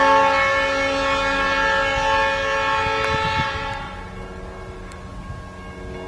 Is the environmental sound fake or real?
real